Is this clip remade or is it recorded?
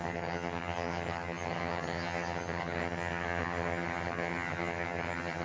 remade